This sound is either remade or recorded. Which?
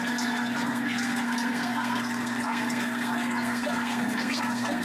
remade